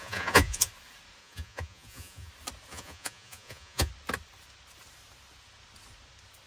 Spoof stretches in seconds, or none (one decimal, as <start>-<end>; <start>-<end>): 0.0-0.7; 1.2-2.3; 2.7-3.9